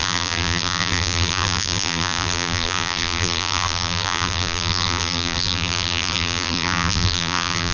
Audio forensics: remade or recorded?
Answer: remade